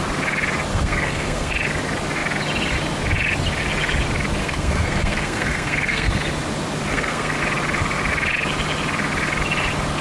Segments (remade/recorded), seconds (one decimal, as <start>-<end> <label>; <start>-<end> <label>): 0.0-0.7 recorded; 0.7-1.5 remade; 1.5-4.4 recorded; 4.4-6.1 remade; 6.1-6.9 recorded; 6.9-7.4 remade; 7.4-10.0 recorded

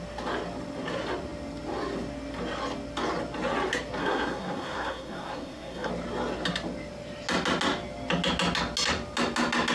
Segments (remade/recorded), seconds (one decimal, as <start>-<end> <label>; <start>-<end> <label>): 0.0-4.0 recorded; 4.0-5.9 remade; 5.9-9.7 recorded

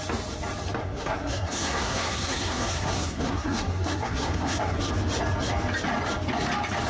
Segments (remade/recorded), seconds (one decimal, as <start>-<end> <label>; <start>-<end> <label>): 0.0-0.8 recorded; 0.8-4.9 remade; 4.9-6.9 recorded

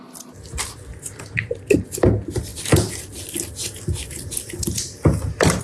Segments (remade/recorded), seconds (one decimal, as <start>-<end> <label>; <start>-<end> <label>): 0.0-5.6 recorded

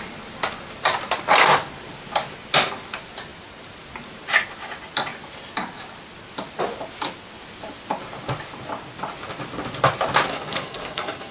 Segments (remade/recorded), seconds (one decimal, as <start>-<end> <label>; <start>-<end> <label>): 0.0-10.3 recorded; 10.3-11.3 remade

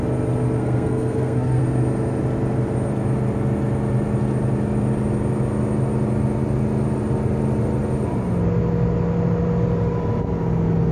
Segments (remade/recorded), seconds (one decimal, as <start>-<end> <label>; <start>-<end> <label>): 0.0-0.6 recorded; 0.6-1.6 remade; 1.6-10.9 recorded